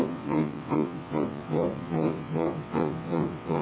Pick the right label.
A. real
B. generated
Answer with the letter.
B